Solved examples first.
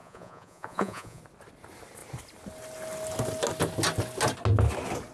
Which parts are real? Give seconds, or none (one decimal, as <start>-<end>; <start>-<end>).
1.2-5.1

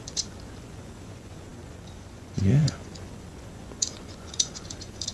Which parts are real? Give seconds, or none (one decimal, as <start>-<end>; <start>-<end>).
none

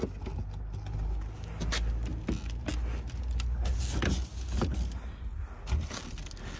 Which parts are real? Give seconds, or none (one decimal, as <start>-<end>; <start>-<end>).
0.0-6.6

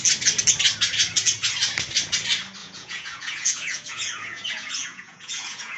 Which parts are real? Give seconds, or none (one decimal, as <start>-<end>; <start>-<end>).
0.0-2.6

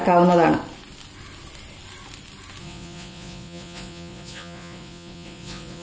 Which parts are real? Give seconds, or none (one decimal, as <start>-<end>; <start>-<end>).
0.0-2.6